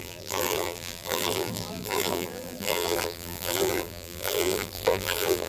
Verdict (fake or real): fake